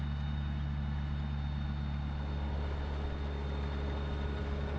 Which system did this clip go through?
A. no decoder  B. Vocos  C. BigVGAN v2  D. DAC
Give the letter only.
A